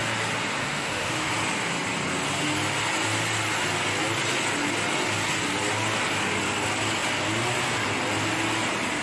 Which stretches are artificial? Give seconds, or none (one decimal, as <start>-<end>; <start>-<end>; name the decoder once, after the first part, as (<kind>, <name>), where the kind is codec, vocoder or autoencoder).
0.6-1.3 (autoencoder, DAC-VAE)